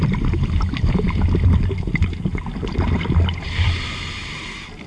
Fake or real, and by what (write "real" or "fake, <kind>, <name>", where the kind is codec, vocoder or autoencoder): real